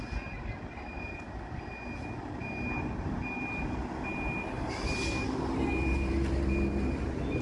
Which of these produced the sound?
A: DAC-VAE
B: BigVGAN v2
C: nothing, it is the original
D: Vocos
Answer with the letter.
C